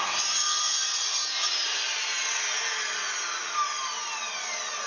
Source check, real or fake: real